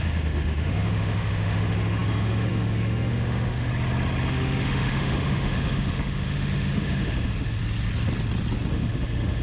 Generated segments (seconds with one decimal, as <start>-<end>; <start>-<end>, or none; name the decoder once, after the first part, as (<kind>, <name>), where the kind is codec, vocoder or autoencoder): 0.0-3.7 (autoencoder, DAC-VAE); 4.3-7.6; 8.7-9.4